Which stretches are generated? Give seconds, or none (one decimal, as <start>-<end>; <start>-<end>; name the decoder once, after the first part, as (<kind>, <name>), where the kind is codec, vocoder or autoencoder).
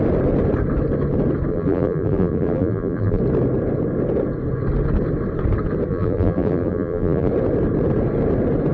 1.5-3.2 (vocoder, BigVGAN v2); 5.9-7.3